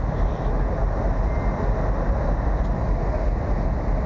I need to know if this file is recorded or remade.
recorded